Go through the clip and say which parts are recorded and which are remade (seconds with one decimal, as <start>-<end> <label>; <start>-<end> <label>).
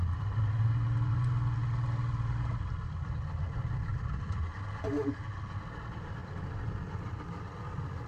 0.0-8.1 recorded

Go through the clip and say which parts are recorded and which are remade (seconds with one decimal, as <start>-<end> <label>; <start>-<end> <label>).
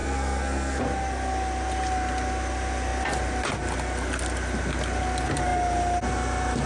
0.0-0.8 remade; 0.8-6.7 recorded